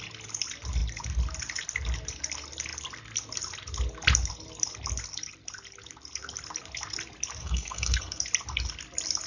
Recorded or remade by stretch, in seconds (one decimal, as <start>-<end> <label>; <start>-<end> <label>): 0.0-7.4 recorded; 7.4-8.2 remade; 8.2-9.3 recorded